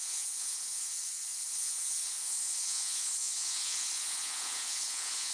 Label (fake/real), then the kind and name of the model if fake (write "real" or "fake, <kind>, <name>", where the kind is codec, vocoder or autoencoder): fake, vocoder, Vocos